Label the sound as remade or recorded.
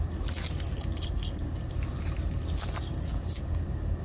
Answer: recorded